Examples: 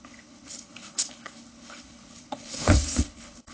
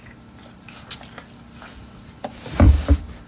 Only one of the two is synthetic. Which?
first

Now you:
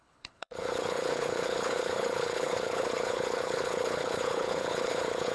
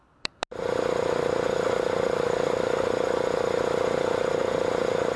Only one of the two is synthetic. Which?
first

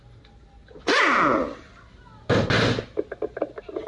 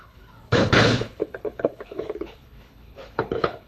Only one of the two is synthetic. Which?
second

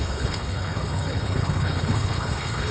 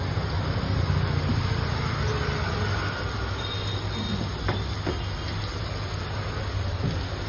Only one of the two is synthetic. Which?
first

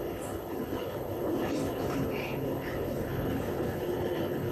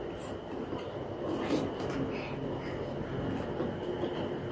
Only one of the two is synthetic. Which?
first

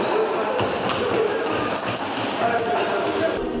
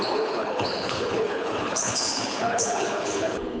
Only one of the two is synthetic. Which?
second